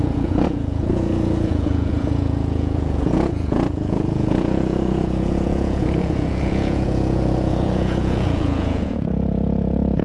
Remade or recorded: remade